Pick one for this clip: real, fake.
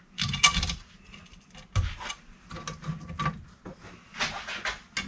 real